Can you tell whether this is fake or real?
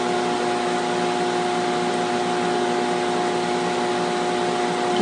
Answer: real